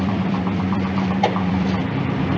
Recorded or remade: remade